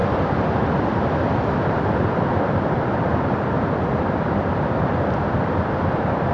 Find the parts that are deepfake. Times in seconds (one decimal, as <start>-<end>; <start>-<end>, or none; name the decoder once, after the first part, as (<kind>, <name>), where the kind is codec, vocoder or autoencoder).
0.0-6.3 (vocoder, BigVGAN v2)